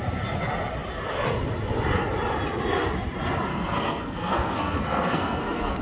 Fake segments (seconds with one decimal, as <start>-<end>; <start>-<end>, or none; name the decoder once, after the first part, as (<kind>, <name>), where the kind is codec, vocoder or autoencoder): 3.5-5.8 (codec, SNAC)

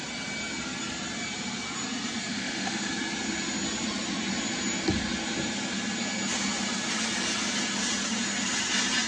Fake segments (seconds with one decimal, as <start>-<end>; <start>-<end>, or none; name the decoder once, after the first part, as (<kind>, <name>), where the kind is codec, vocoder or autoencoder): 2.3-2.9 (autoencoder, DAC-VAE)